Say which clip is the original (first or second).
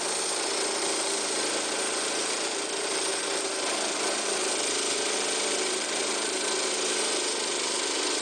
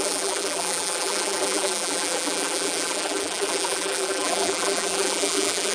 first